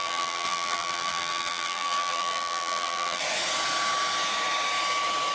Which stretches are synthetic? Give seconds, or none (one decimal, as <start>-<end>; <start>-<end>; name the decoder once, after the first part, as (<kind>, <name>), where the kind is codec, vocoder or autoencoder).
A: 0.0-3.2 (vocoder, BigVGAN v2)